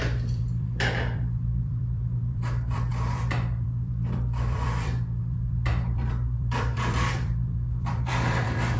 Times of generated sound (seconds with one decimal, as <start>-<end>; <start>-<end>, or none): 0.0-8.8